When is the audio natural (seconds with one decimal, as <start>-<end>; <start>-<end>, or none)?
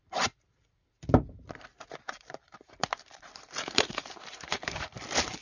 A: 0.0-1.7; 4.9-5.4